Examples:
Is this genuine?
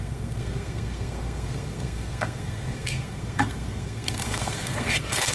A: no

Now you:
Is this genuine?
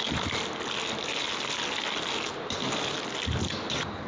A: yes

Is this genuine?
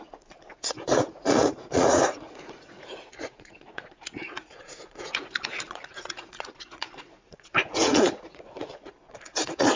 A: no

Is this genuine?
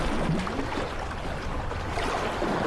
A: yes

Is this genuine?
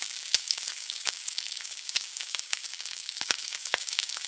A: no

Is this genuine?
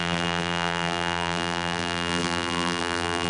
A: no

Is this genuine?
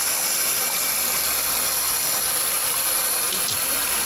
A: yes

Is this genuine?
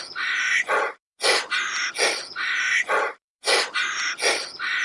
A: yes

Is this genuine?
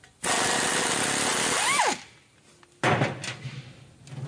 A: yes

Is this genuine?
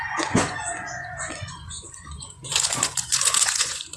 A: no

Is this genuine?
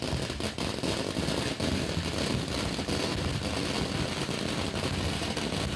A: yes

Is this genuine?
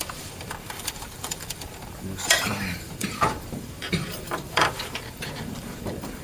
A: no